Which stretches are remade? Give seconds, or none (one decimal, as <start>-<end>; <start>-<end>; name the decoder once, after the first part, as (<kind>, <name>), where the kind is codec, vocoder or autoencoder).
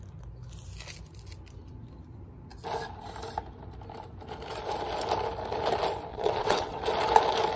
6.1-6.8 (vocoder, WaveNeXt)